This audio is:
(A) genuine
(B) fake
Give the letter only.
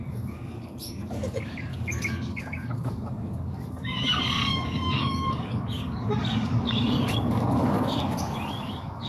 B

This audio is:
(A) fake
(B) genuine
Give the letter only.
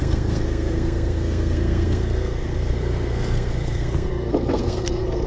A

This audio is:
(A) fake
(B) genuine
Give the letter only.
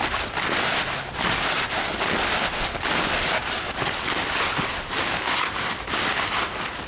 B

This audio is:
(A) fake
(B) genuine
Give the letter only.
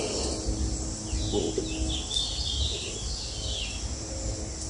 B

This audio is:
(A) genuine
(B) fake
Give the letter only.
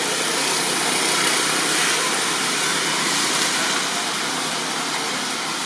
A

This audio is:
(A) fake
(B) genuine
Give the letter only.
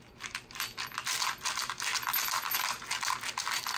A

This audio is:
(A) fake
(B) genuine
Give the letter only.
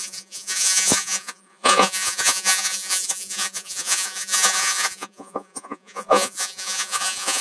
A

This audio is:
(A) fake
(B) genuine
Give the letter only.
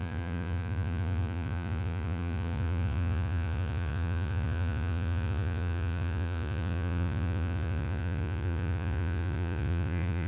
A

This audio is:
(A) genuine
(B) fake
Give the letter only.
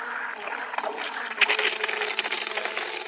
A